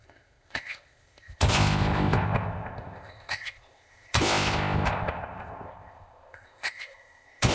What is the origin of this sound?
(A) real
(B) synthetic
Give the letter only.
B